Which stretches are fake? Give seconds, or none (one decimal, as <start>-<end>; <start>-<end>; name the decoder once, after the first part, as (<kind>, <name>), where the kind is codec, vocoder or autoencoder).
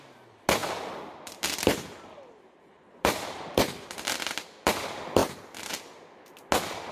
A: 0.6-4.7 (vocoder, BigVGAN v2); 5.2-5.7